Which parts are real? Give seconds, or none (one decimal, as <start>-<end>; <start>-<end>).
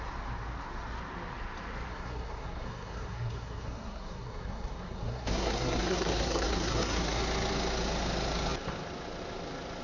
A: 0.0-1.9; 7.2-9.8